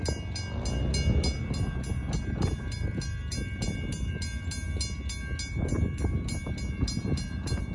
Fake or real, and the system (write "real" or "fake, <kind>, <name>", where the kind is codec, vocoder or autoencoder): real